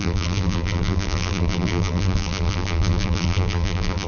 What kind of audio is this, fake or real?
fake